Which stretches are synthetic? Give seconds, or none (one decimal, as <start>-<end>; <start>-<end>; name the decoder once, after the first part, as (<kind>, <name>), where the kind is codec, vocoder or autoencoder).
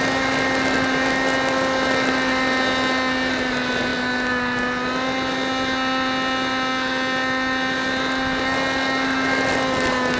none